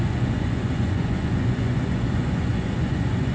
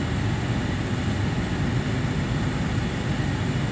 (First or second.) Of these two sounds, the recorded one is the second